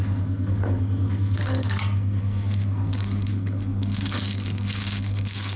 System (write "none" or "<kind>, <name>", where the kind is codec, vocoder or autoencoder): codec, SNAC